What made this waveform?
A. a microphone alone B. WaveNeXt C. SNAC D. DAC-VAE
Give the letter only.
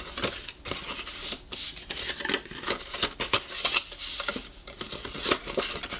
A